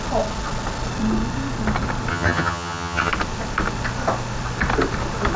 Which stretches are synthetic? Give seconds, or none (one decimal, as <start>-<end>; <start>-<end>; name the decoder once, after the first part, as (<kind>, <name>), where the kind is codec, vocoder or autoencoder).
2.1-3.1 (vocoder, HiFi-GAN)